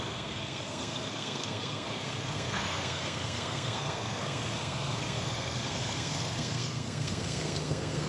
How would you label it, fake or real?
fake